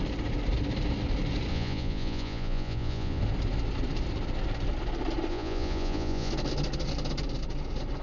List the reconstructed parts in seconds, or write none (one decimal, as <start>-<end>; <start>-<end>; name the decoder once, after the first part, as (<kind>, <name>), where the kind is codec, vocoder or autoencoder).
1.5-3.2 (vocoder, Vocos); 5.3-6.3